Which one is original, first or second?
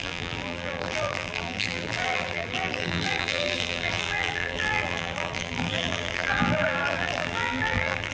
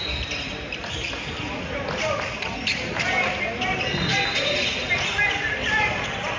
second